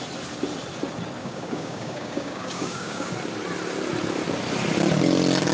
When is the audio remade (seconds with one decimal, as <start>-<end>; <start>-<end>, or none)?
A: 1.2-3.1